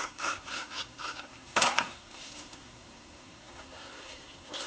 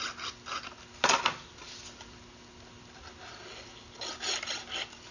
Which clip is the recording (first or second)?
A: second